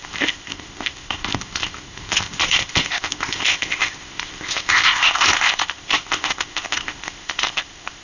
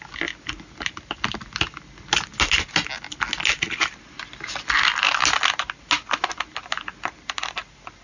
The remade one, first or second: first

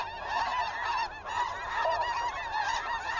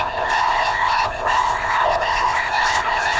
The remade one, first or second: second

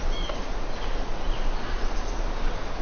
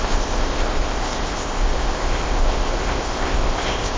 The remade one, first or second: second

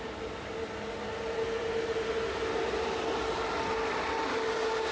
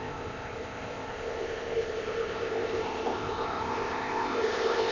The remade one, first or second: second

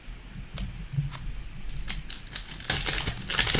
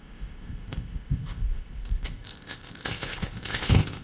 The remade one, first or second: second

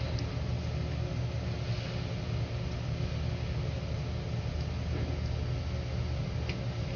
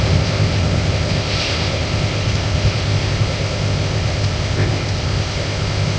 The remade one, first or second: second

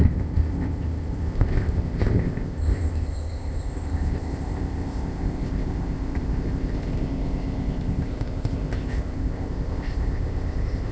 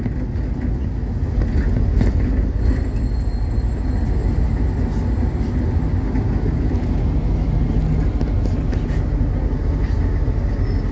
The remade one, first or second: first